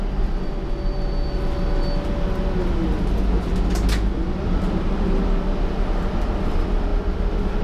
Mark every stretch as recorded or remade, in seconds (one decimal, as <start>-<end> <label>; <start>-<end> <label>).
0.0-7.6 recorded